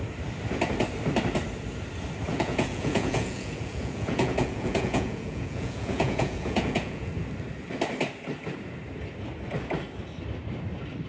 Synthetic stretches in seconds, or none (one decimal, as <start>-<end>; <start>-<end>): 2.3-7.1